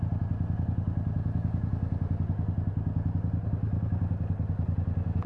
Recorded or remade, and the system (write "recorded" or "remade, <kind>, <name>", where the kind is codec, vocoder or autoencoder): recorded